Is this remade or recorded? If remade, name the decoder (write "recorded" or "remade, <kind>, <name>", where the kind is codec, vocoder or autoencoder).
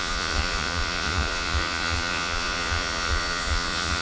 remade, vocoder, Vocos